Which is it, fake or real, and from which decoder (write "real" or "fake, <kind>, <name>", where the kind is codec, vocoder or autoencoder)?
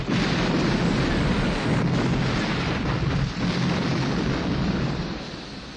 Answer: real